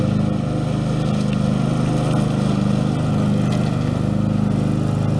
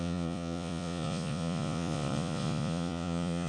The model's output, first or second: second